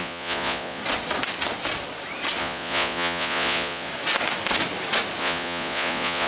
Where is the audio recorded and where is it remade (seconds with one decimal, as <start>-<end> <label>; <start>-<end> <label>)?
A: 0.0-0.8 remade; 0.8-2.4 recorded; 2.4-3.9 remade; 3.9-5.2 recorded; 5.2-6.3 remade